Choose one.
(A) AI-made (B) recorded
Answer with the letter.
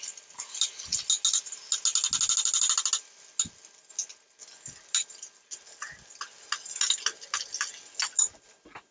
B